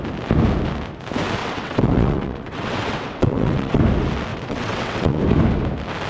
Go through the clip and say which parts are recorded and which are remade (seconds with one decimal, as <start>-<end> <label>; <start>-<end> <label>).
0.0-1.4 recorded; 1.4-3.8 remade; 3.8-4.3 recorded; 4.3-5.2 remade; 5.2-6.1 recorded